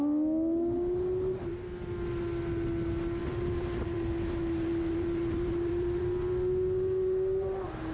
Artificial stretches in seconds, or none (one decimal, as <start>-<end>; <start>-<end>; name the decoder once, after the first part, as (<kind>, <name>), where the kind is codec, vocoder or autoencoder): 3.2-6.0 (vocoder, BigVGAN v2)